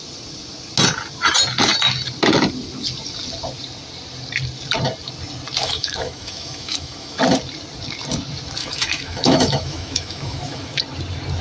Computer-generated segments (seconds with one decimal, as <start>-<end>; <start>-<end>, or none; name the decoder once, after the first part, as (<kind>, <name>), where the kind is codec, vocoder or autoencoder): 5.6-7.2 (autoencoder, DAC-VAE); 8.6-10.8